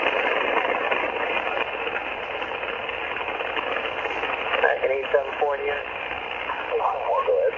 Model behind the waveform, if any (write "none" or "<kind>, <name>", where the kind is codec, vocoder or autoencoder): none